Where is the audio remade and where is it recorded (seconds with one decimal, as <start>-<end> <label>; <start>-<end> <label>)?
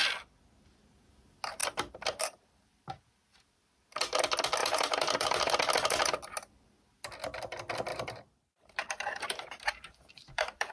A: 0.0-1.6 recorded; 1.6-3.0 remade; 3.0-4.6 recorded; 4.6-5.5 remade; 5.5-7.9 recorded; 7.9-10.7 remade